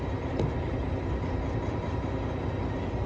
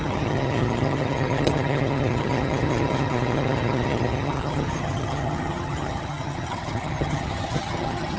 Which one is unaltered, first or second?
first